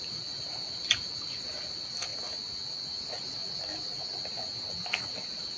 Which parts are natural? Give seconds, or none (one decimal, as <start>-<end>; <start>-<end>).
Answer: 2.1-3.0; 3.4-5.1